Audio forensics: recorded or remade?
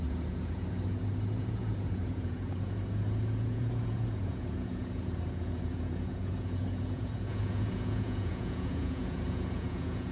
remade